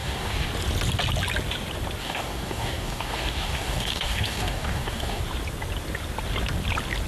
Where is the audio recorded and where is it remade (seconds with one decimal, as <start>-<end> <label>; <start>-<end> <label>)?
0.0-0.5 remade; 0.5-2.0 recorded; 2.0-5.2 remade; 5.2-7.1 recorded